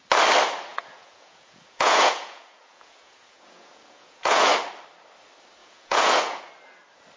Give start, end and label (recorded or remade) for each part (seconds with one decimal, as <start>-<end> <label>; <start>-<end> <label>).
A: 0.0-0.7 recorded; 0.7-4.5 remade; 4.5-5.6 recorded; 5.6-6.4 remade; 6.4-7.2 recorded